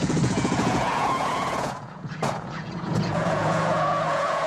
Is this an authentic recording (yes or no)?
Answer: no